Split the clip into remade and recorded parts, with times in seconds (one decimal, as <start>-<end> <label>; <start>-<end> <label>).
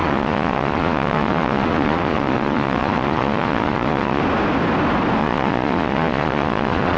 0.0-4.2 remade; 4.2-5.2 recorded; 5.2-7.0 remade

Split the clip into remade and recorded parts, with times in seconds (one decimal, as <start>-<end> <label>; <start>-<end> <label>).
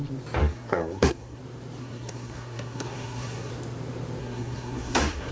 0.0-0.4 recorded; 0.4-1.4 remade; 1.4-1.8 recorded; 1.8-3.5 remade; 3.5-4.2 recorded; 4.2-5.3 remade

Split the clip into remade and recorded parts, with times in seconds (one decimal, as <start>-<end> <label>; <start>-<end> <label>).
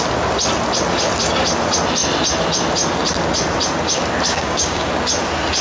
0.0-4.3 recorded; 4.3-4.9 remade; 4.9-5.6 recorded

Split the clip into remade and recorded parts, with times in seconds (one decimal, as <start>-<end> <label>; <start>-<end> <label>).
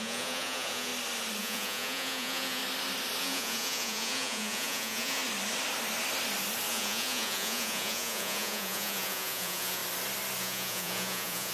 0.0-0.9 remade; 0.9-1.4 recorded; 1.4-2.6 remade; 2.6-3.2 recorded; 3.2-5.2 remade; 5.2-6.7 recorded; 6.7-9.8 remade; 9.8-10.4 recorded; 10.4-11.5 remade